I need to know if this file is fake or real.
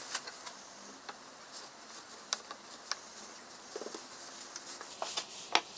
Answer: real